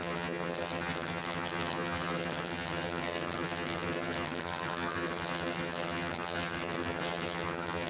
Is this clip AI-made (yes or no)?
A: yes